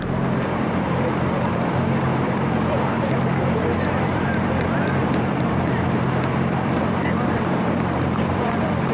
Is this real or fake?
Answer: fake